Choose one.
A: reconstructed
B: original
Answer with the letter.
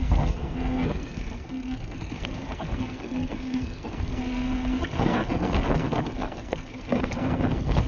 A